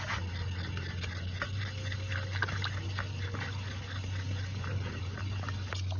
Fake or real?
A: real